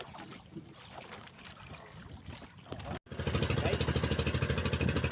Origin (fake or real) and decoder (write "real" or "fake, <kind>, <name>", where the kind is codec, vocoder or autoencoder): real